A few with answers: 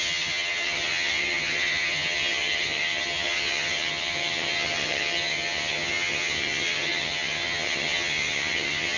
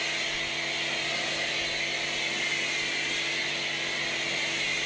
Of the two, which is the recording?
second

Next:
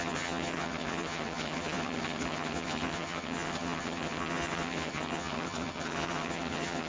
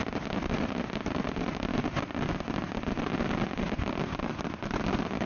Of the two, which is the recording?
second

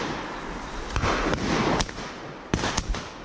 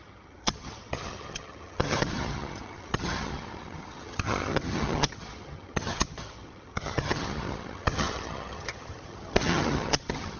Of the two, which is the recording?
first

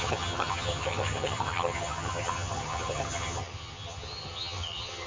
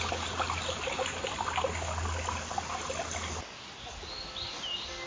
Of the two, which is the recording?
second